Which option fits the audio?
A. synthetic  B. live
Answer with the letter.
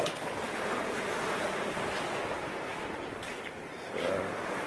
A